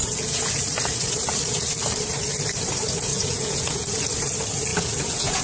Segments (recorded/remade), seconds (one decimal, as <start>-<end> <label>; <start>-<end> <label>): 0.0-0.6 remade; 0.6-3.1 recorded; 3.1-4.0 remade; 4.0-4.7 recorded; 4.7-5.4 remade